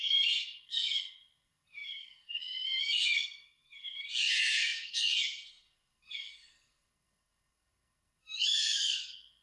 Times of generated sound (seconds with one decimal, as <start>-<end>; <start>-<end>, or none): 0.0-9.4